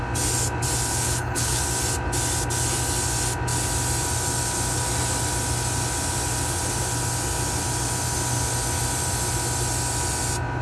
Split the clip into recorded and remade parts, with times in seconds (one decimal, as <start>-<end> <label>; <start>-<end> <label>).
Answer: 0.0-0.9 recorded; 0.9-1.6 remade; 1.6-10.6 recorded